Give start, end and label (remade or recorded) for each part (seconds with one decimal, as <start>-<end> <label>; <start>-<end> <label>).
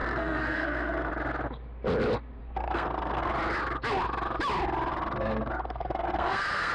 0.0-1.1 remade; 1.1-2.4 recorded; 2.4-3.3 remade; 3.3-4.9 recorded; 4.9-6.7 remade